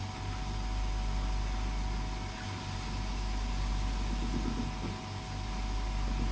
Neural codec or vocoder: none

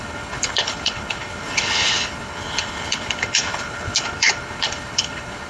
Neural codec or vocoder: codec, HILCodec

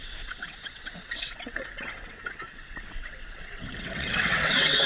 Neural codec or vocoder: vocoder, WaveNeXt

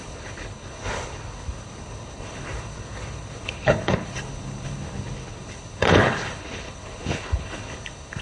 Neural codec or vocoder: codec, HILCodec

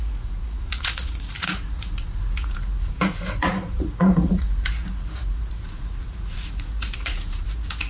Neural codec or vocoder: vocoder, Vocos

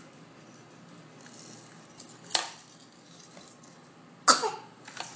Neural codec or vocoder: none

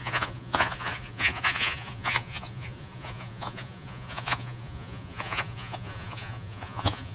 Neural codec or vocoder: vocoder, Vocos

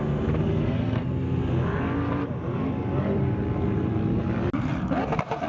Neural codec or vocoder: none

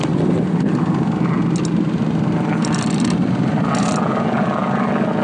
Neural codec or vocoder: none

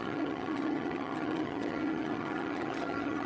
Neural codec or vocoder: vocoder, HiFi-GAN